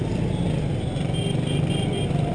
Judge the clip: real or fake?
real